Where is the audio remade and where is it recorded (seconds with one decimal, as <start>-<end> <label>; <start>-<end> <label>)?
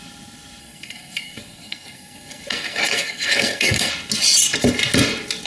0.0-0.6 recorded; 0.6-3.9 remade; 3.9-5.5 recorded